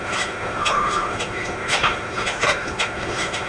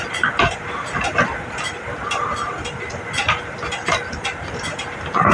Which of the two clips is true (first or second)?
second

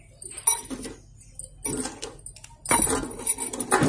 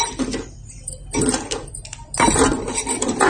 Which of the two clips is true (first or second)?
first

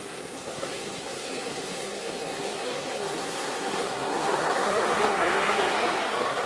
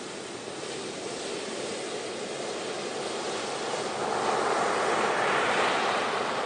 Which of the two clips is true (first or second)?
second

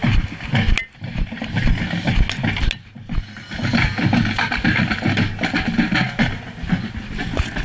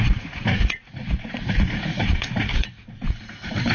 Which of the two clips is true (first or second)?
first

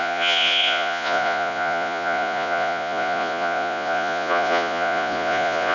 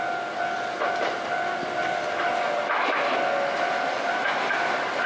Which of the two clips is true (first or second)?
second